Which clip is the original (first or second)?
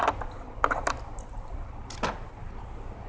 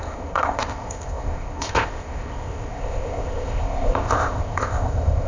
first